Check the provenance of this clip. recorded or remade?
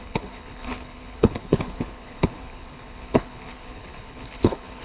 remade